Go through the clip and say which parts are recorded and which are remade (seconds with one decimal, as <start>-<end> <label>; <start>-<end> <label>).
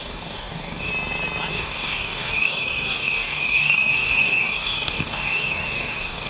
0.0-0.9 remade; 0.9-1.5 recorded; 1.5-6.3 remade